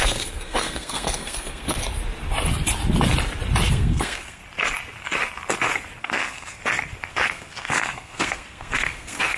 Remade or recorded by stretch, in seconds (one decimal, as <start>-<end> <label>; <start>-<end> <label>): 0.0-1.8 remade; 1.8-3.7 recorded; 3.7-4.4 remade; 4.4-6.0 recorded; 6.0-6.6 remade; 6.6-7.1 recorded; 7.1-9.4 remade